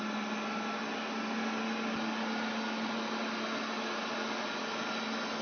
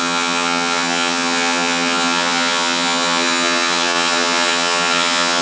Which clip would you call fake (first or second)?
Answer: second